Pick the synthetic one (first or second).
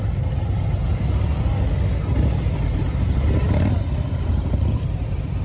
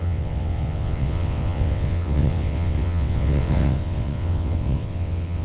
second